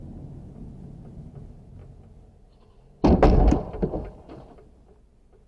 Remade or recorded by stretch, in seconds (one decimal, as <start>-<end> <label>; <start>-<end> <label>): 0.0-5.5 recorded